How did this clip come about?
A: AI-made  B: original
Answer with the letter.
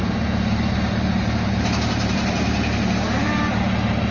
A